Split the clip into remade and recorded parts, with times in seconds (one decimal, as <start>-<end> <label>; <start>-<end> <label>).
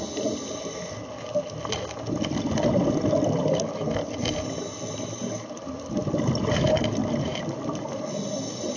0.0-8.8 recorded